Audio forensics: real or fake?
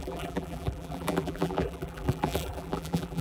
fake